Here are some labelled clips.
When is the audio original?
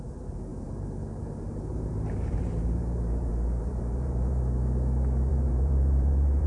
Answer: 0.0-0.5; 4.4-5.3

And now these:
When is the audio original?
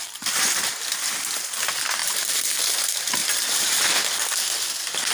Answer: 0.0-2.0; 2.6-3.2; 3.8-5.1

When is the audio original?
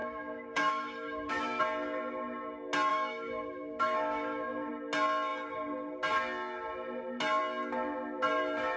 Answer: 1.6-2.9; 4.7-8.8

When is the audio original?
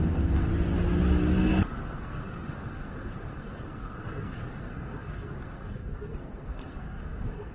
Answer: 0.5-1.6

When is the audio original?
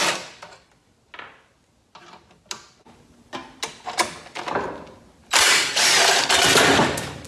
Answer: 0.0-7.3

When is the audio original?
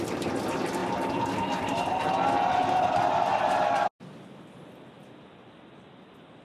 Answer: 0.0-6.4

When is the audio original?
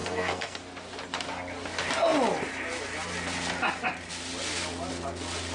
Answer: 0.6-5.5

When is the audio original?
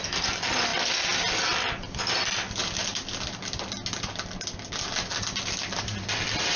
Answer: 0.0-6.6